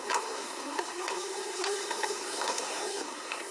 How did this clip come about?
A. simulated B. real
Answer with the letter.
A